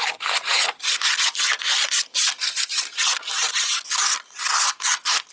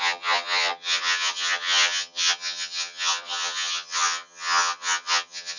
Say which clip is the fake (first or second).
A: second